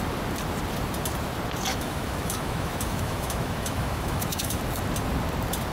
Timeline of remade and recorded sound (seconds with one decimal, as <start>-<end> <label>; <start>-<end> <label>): 0.0-1.7 recorded; 1.7-4.6 remade; 4.6-5.7 recorded